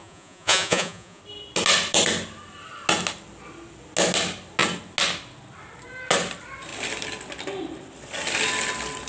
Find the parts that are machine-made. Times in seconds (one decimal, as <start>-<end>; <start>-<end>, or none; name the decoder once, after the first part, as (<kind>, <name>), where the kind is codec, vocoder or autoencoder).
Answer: 0.0-1.2 (vocoder, Vocos)